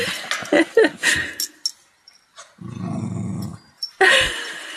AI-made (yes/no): no